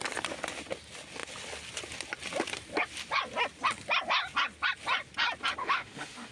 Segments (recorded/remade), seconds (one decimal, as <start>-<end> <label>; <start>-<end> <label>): 0.0-5.6 recorded; 5.6-6.3 remade